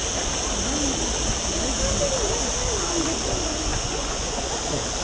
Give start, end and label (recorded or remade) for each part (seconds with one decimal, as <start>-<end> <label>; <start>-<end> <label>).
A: 0.0-3.7 recorded; 3.7-4.5 remade; 4.5-5.0 recorded